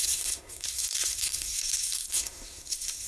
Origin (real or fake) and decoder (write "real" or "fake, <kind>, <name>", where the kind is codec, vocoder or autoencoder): fake, codec, SNAC